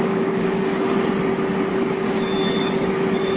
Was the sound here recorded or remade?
remade